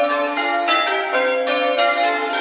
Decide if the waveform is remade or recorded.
recorded